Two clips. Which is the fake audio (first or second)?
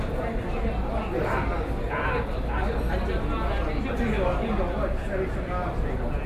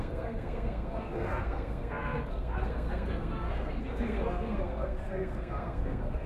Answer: second